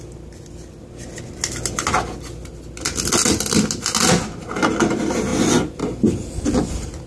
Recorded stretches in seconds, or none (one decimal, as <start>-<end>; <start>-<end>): 0.0-7.1